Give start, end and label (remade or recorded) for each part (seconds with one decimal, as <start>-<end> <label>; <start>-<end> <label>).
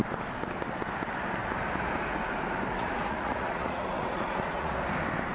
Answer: 0.0-2.7 recorded; 2.7-4.7 remade; 4.7-5.3 recorded